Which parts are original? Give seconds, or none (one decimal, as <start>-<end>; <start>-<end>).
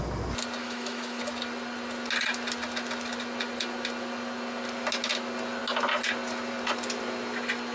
0.0-0.6; 1.2-7.7